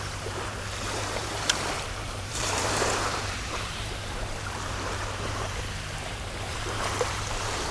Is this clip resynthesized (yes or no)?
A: yes